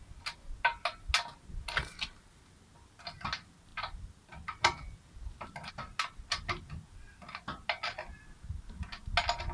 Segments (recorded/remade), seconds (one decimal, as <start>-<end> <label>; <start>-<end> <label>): 0.0-9.5 recorded